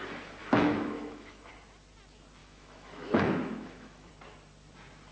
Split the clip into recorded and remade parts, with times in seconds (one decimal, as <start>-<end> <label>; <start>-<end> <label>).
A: 0.0-0.4 recorded; 0.4-1.5 remade; 1.5-2.4 recorded; 2.4-4.1 remade; 4.1-5.1 recorded